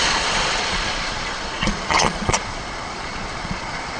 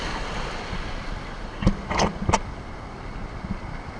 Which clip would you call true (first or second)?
second